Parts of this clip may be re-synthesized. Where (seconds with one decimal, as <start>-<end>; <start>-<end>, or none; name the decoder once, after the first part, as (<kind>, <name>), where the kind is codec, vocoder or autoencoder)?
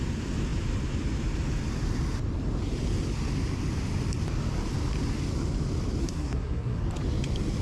6.0-6.8 (codec, SNAC)